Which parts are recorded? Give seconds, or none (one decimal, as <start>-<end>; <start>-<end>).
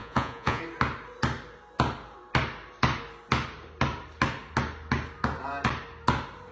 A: 0.6-6.5